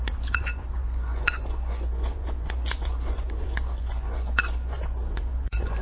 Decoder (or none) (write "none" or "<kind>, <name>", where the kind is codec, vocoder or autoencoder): vocoder, Vocos